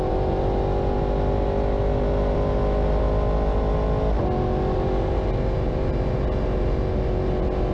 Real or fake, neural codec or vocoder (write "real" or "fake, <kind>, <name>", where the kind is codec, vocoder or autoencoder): real